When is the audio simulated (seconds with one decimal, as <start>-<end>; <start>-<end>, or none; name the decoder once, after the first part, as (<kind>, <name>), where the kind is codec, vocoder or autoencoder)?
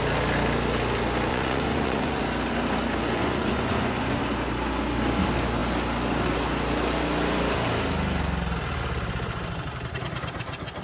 1.3-2.2 (vocoder, Vocos); 3.2-4.2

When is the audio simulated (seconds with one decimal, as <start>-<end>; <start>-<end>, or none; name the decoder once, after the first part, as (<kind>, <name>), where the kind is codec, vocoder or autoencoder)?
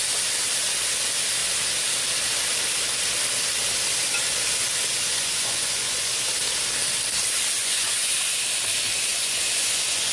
5.1-6.1 (vocoder, Vocos); 7.6-8.1; 9.1-10.1